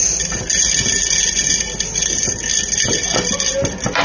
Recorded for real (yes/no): yes